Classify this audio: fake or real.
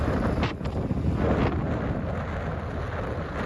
real